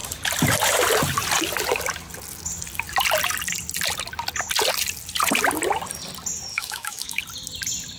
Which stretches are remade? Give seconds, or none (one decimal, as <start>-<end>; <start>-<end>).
6.5-7.2